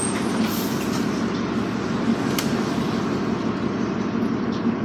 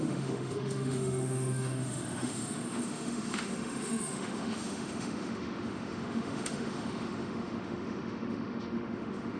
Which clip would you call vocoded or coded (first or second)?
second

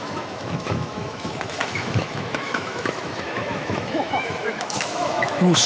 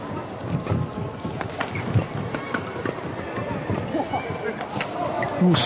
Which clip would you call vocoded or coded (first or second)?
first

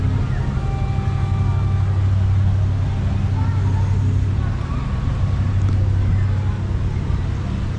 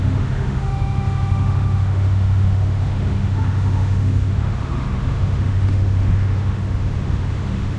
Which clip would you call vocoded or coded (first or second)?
second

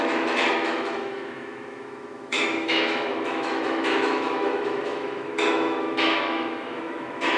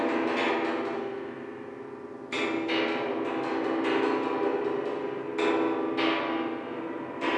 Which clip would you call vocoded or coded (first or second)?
first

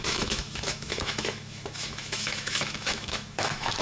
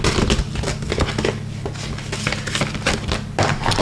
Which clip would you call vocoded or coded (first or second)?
first